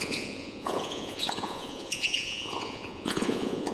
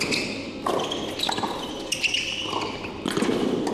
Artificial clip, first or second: first